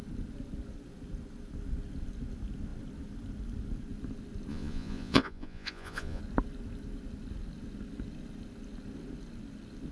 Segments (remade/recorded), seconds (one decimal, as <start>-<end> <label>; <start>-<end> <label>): 0.0-4.5 recorded; 4.5-6.2 remade; 6.2-9.9 recorded